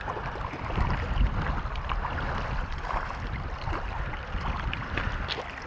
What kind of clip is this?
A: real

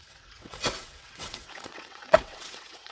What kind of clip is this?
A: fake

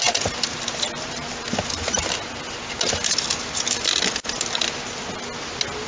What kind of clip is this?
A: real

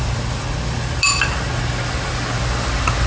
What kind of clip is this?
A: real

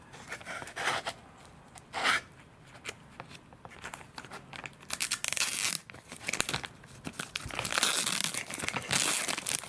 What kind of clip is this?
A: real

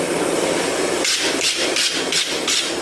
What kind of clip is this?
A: real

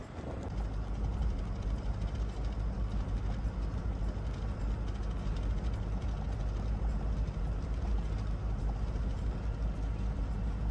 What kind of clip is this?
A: real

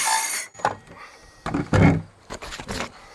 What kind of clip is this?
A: real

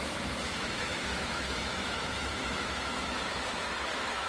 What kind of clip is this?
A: fake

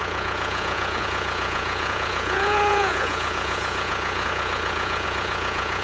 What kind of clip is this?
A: fake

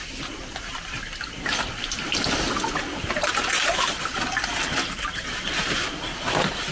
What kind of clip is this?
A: real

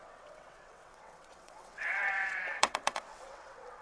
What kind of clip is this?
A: fake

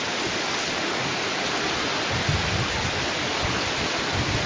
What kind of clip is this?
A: real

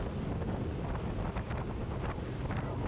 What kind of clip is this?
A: real